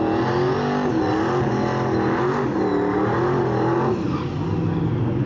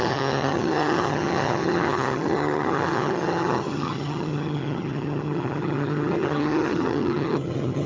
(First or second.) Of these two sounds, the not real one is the second